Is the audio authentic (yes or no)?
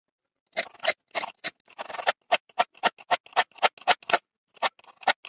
yes